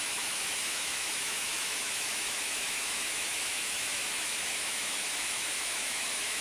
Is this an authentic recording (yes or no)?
no